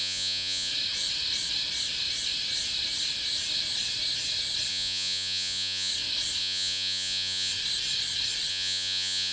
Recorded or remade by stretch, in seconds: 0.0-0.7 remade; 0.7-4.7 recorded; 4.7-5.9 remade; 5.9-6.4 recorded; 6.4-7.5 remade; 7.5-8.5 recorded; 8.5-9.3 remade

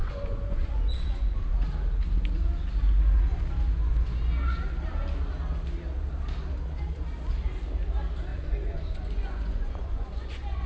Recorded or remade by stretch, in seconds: 0.0-1.4 remade; 1.4-8.3 recorded; 8.3-10.7 remade